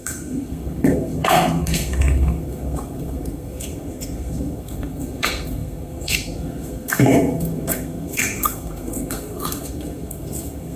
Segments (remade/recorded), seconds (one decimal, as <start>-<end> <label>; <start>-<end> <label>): 0.0-10.8 remade